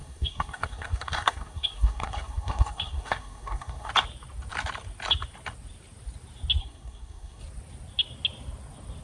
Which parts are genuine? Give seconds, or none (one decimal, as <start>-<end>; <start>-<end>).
3.9-6.6; 7.4-9.0